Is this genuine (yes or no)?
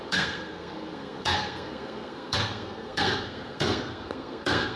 no